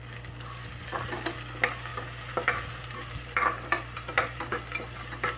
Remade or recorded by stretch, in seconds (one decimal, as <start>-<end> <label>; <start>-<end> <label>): 0.0-1.9 recorded; 1.9-4.5 remade; 4.5-5.4 recorded